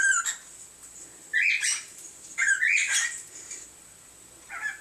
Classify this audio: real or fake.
real